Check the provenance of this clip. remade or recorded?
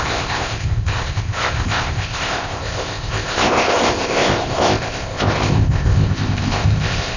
remade